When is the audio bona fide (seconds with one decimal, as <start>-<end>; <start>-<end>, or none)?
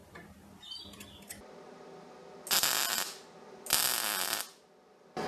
0.0-5.3